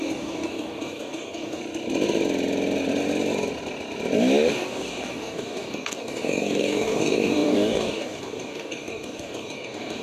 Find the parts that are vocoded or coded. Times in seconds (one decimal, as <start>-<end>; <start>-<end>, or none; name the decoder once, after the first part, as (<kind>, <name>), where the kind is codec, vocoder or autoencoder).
0.0-1.6 (codec, DAC); 4.5-10.0